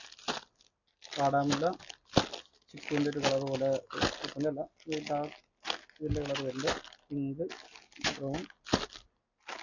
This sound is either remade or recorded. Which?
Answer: recorded